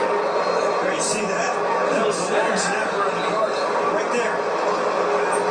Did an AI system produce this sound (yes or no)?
no